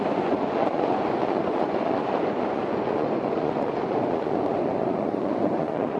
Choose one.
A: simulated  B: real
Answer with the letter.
A